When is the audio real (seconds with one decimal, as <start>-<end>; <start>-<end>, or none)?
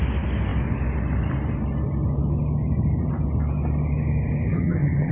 0.0-4.5